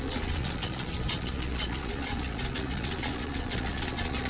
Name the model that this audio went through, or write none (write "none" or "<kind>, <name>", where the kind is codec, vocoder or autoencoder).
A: vocoder, Vocos